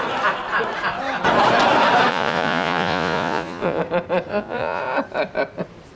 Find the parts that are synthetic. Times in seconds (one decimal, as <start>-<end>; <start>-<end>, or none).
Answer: 2.1-3.8; 4.3-4.8